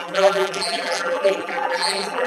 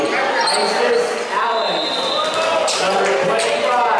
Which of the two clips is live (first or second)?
second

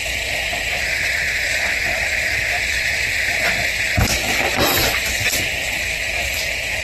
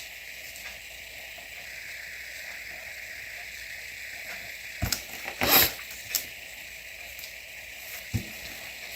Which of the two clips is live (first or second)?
second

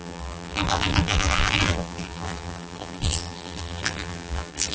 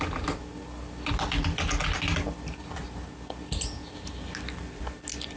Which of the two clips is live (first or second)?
second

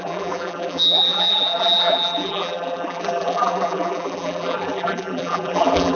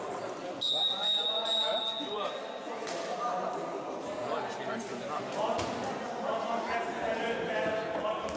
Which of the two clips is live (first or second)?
second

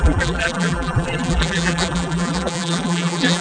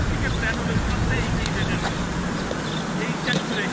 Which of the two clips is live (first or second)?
second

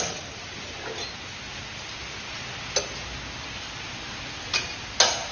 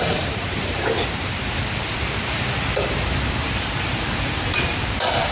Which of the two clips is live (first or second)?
first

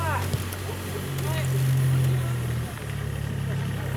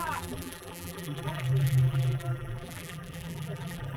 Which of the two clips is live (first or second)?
first